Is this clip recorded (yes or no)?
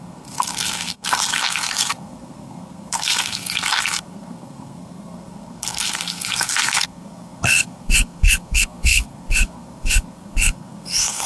no